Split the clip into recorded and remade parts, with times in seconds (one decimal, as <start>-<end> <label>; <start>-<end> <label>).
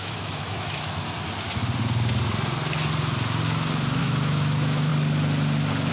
0.0-1.0 remade; 1.0-4.0 recorded; 4.0-4.9 remade; 4.9-5.9 recorded